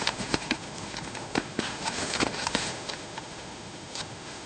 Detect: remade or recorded remade